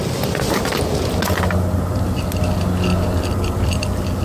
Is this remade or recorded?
recorded